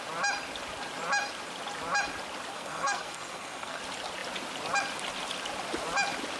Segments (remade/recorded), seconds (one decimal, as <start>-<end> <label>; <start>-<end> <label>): 0.0-2.5 recorded; 2.5-3.8 remade; 3.8-6.4 recorded